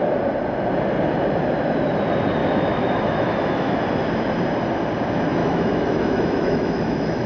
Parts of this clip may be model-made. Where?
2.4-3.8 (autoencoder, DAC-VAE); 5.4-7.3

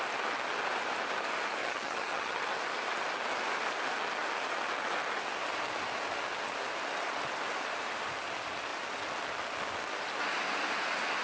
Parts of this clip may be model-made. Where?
1.6-2.4 (vocoder, HiFi-GAN)

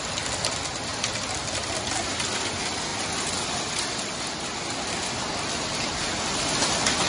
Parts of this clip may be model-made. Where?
none

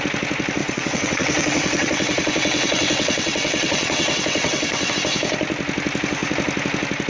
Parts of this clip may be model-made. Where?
0.6-4.9 (vocoder, WaveNeXt)

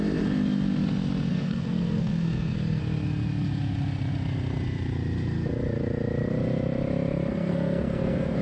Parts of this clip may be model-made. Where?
1.3-2.8 (codec, SNAC); 7.3-8.4

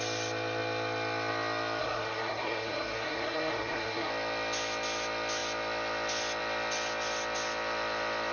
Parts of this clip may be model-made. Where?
1.8-4.1 (codec, SNAC)